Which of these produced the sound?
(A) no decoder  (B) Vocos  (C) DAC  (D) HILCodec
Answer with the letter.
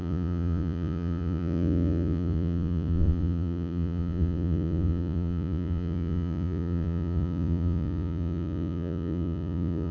B